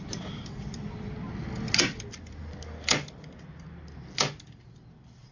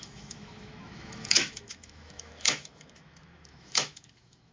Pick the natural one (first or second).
first